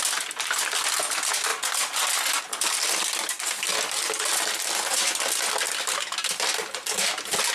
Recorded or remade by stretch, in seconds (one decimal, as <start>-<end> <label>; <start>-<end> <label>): 0.0-1.5 remade; 1.5-2.4 recorded; 2.4-3.7 remade; 3.7-7.5 recorded